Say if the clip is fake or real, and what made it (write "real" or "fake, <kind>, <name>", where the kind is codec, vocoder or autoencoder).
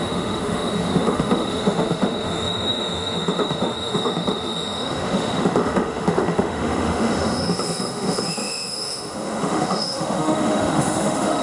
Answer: fake, autoencoder, DAC-VAE